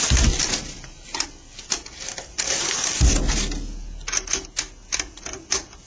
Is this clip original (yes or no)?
yes